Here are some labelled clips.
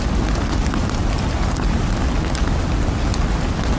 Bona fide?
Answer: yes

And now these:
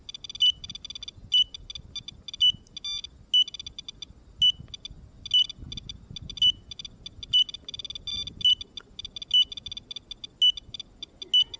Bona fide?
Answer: yes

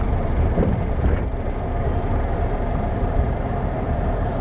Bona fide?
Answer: no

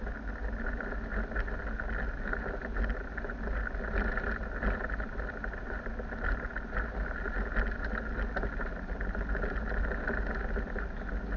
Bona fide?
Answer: yes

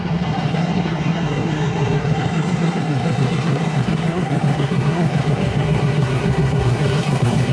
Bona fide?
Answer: no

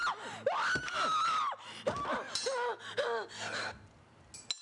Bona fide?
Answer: yes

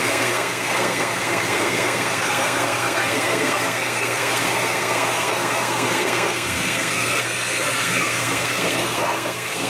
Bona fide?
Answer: no